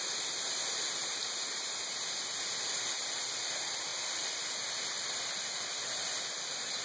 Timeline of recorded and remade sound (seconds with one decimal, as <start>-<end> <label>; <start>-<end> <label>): 0.0-1.0 recorded; 1.0-2.2 remade; 2.2-6.8 recorded